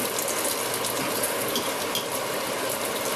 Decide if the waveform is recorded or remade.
recorded